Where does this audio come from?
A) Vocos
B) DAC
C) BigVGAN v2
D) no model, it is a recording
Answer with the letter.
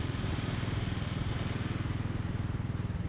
D